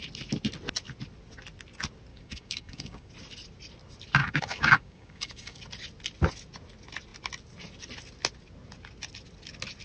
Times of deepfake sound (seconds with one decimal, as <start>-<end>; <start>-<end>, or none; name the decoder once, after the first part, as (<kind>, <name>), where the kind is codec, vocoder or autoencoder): 2.1-3.1 (codec, DAC); 4.2-5.6